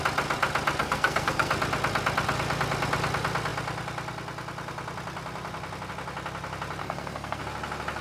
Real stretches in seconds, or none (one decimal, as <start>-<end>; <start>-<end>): 0.0-0.8; 1.5-6.8; 7.4-8.0

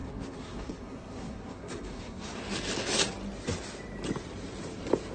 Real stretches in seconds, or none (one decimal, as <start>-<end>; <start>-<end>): 2.4-5.1

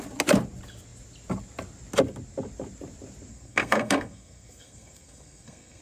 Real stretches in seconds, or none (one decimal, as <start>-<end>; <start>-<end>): 0.0-3.3

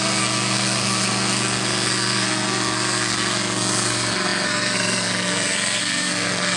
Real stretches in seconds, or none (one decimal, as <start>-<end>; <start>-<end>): none

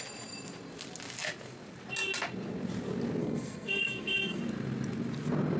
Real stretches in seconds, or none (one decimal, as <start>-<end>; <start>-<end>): 0.0-3.2; 4.4-5.6

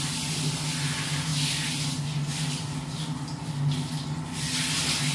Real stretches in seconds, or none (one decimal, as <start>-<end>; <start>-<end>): 0.0-5.1

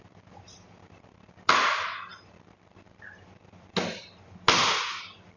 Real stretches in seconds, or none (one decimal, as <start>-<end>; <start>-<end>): 0.0-5.4